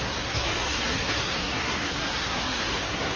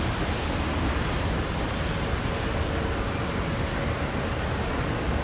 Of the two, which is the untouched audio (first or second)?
second